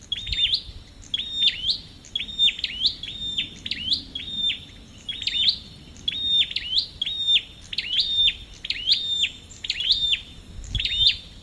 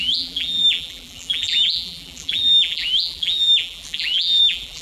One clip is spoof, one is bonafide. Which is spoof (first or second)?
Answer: second